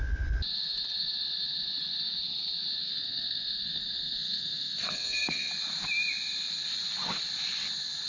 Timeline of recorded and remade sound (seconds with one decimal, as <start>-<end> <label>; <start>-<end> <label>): 0.0-2.8 recorded; 2.8-5.5 remade; 5.5-8.1 recorded